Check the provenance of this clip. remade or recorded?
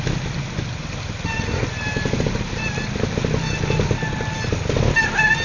recorded